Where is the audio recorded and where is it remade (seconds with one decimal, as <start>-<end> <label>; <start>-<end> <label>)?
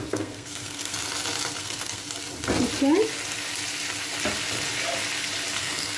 0.0-1.1 remade; 1.1-1.6 recorded; 1.6-2.0 remade; 2.0-5.6 recorded; 5.6-6.0 remade